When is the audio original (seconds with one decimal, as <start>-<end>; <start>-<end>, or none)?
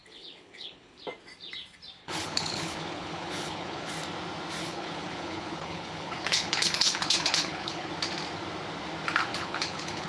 1.0-2.0; 3.9-4.6; 7.9-9.3